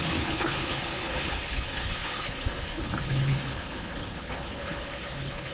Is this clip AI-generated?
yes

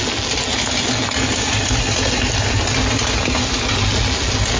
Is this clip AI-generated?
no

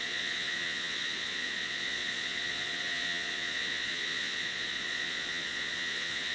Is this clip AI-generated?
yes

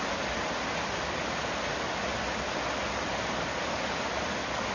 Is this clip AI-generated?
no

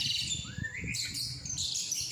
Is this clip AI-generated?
no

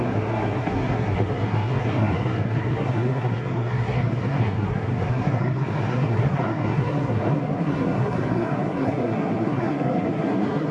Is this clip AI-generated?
yes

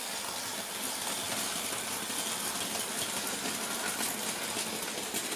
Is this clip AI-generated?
no